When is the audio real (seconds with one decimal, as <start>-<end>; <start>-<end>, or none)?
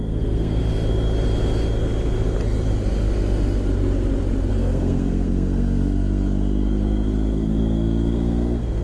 0.6-4.5